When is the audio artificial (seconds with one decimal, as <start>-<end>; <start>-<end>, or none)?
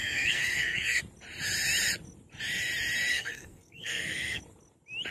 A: 0.0-1.0; 3.1-4.4